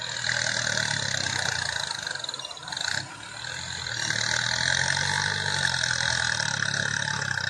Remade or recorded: recorded